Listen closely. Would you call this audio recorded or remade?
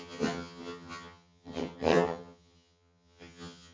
remade